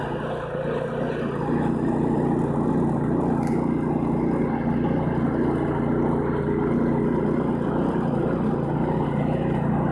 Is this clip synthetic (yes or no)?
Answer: no